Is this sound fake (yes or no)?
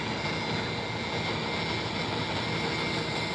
no